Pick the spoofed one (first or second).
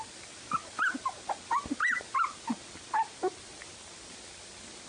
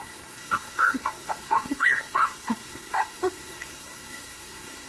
second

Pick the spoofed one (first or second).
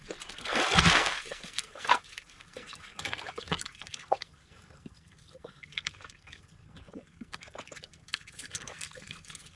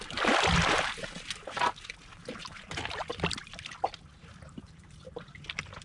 first